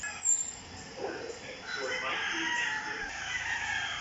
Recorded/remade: recorded